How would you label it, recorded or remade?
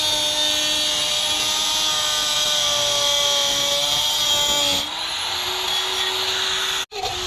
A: recorded